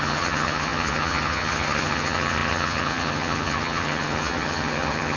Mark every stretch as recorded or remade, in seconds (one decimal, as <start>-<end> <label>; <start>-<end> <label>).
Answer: 0.0-5.2 remade